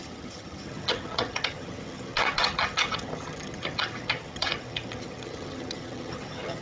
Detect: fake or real fake